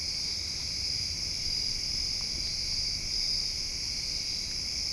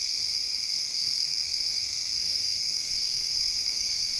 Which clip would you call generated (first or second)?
second